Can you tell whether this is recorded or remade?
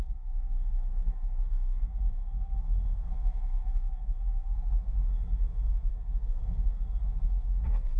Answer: remade